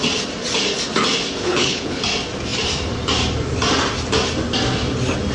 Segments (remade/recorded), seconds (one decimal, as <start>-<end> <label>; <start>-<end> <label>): 0.0-1.4 recorded; 1.4-2.0 remade; 2.0-5.3 recorded